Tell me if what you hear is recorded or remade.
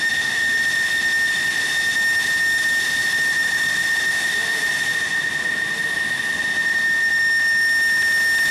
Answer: recorded